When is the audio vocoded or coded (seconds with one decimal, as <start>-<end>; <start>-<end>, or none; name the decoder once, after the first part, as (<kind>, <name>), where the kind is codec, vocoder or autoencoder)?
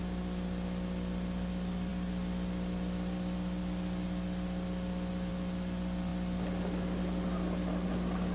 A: none